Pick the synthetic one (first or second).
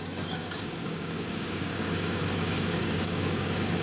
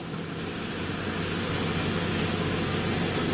first